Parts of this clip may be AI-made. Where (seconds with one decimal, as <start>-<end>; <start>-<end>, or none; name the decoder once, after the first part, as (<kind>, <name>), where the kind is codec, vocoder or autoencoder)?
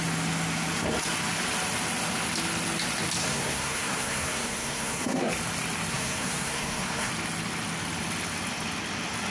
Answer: 3.2-5.3 (codec, SNAC); 5.9-7.1